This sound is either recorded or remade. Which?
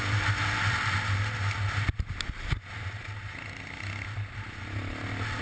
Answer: recorded